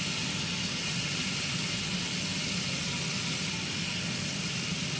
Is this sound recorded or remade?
recorded